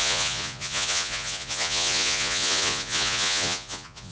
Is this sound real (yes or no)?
no